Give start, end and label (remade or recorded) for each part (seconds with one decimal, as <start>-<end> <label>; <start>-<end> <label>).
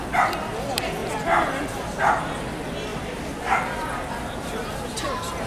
0.0-1.0 recorded; 1.0-1.6 remade; 1.6-2.9 recorded; 2.9-4.2 remade; 4.2-5.5 recorded